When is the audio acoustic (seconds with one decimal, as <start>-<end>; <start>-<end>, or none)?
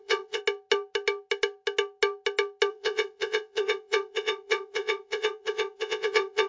0.4-2.7